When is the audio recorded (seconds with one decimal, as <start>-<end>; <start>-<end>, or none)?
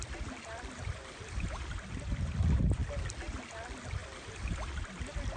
2.8-3.4; 4.0-4.7